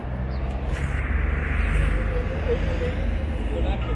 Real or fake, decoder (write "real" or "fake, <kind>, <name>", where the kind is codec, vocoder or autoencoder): real